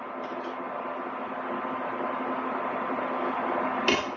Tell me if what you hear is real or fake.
real